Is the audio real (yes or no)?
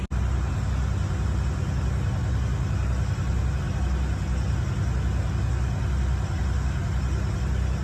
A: yes